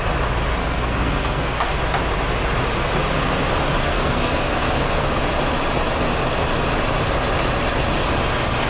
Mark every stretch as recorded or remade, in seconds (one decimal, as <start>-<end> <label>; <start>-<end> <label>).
0.0-0.6 recorded; 0.6-1.8 remade; 1.8-3.8 recorded; 3.8-5.2 remade; 5.2-8.7 recorded